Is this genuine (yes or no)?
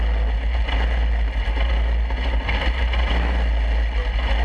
yes